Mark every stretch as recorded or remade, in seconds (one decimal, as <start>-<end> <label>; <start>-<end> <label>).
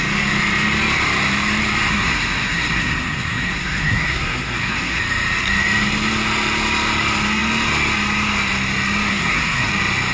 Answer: 0.0-1.9 recorded; 1.9-5.0 remade; 5.0-9.1 recorded; 9.1-9.7 remade; 9.7-10.1 recorded